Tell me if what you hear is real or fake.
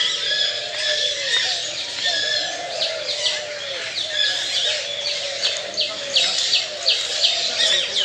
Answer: real